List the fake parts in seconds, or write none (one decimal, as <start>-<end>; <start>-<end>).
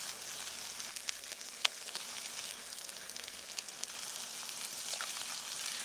0.9-2.0; 2.5-3.9